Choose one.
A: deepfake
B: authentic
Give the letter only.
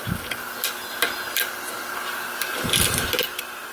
B